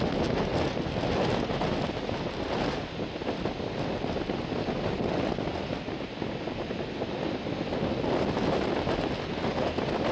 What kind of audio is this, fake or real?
real